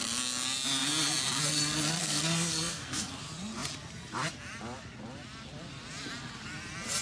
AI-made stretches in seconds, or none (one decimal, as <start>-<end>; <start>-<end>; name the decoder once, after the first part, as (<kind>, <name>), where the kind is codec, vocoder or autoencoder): 2.0-3.1 (codec, SNAC)